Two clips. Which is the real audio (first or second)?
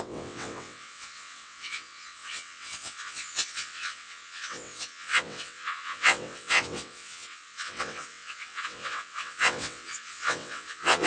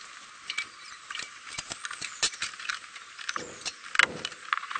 second